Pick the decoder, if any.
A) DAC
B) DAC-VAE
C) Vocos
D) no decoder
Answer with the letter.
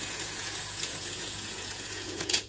C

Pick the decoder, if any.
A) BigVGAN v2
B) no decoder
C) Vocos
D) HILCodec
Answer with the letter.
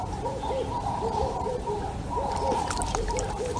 A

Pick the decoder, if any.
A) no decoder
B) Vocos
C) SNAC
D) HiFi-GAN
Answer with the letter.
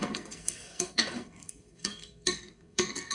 C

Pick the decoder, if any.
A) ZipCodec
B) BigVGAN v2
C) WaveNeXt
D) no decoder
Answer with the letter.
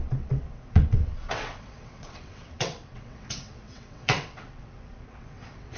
C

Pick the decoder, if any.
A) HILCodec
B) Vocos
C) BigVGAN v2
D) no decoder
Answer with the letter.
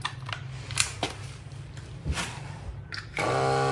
D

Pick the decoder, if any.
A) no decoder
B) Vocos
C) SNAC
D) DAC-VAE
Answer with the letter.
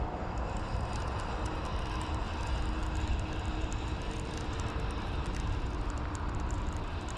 A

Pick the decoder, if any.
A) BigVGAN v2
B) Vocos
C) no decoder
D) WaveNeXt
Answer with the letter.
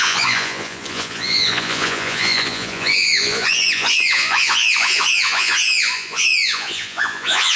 B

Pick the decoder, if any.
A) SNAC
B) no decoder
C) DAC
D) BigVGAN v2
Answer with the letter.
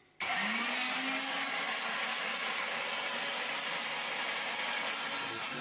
B